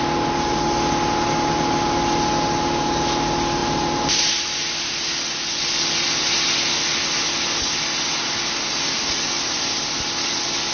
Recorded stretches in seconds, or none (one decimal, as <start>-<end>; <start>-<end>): 0.0-10.7